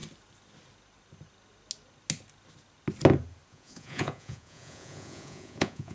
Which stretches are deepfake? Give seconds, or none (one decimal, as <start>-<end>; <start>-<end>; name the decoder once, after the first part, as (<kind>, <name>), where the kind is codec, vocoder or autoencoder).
3.5-5.9 (vocoder, Vocos)